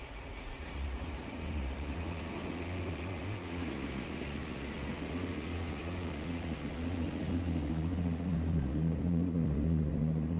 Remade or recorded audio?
remade